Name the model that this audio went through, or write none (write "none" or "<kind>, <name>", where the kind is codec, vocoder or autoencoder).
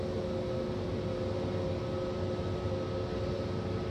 none